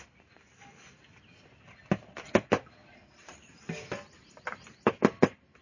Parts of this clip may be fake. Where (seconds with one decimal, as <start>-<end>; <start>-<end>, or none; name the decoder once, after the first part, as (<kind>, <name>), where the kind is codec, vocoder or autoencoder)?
2.8-4.9 (vocoder, BigVGAN v2)